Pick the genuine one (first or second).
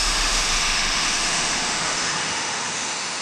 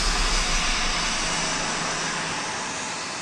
second